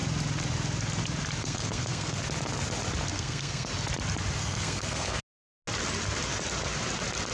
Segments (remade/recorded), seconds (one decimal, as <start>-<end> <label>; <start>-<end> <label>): 0.0-1.4 recorded; 1.4-2.2 remade; 2.2-3.1 recorded; 3.1-3.7 remade; 3.7-4.4 recorded; 4.4-5.2 remade; 5.2-7.3 recorded